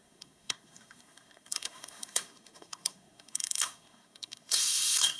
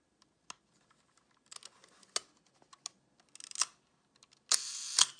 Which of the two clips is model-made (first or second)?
first